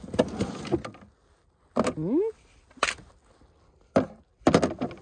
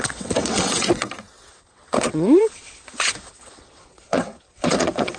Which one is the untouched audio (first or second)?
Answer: first